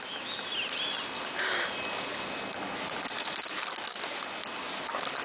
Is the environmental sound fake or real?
real